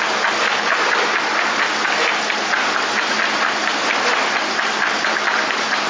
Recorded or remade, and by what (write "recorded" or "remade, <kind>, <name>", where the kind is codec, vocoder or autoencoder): recorded